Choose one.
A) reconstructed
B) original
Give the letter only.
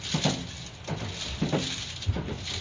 B